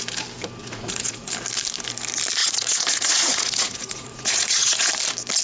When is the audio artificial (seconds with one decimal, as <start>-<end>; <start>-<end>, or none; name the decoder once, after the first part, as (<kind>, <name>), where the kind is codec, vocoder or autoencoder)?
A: 0.6-1.3 (vocoder, Vocos); 2.4-4.9